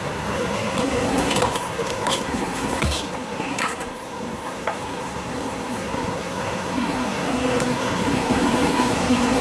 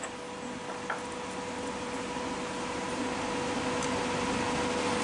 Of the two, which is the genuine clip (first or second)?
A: second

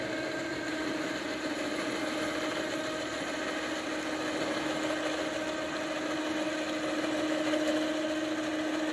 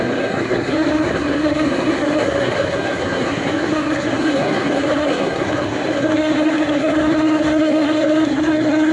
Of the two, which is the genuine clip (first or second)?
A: first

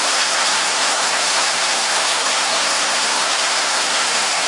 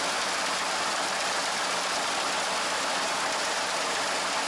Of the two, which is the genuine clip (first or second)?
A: second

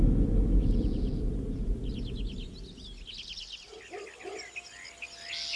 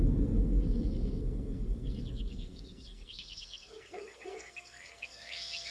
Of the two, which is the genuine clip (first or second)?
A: first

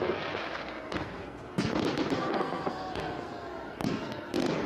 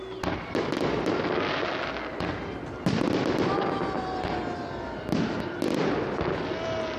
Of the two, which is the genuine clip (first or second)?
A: second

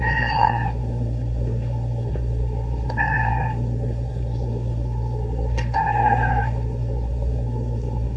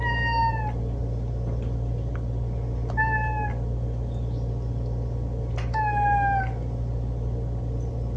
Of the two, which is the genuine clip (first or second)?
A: second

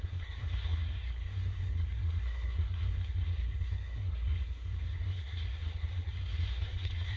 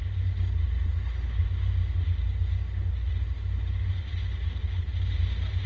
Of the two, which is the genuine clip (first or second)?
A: second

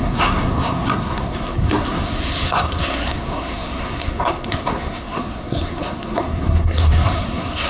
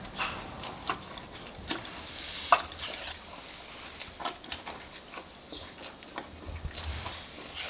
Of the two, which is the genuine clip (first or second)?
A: second